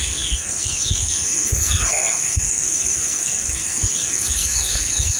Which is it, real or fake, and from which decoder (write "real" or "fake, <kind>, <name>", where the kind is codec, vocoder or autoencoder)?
fake, codec, SNAC